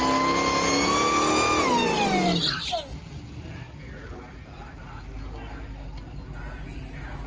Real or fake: real